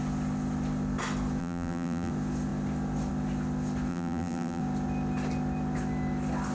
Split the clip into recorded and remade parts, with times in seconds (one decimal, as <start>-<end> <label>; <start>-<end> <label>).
0.0-1.4 recorded; 1.4-2.1 remade; 2.1-3.9 recorded; 3.9-4.6 remade; 4.6-6.5 recorded